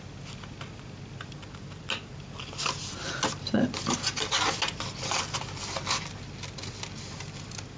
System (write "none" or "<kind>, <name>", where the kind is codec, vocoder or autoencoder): none